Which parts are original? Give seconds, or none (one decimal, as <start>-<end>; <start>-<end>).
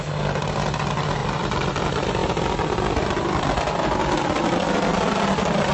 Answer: 0.0-1.2; 1.8-2.2; 3.6-4.9